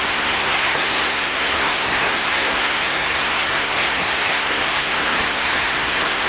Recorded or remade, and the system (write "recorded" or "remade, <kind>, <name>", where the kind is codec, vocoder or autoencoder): remade, codec, SNAC